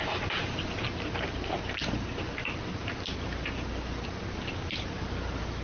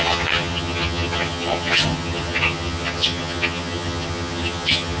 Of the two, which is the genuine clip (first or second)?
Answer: first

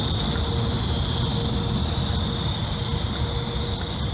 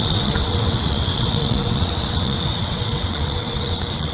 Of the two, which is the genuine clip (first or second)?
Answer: first